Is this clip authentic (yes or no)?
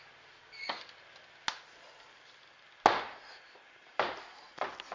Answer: yes